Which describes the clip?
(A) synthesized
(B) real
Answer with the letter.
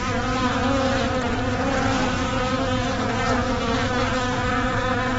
B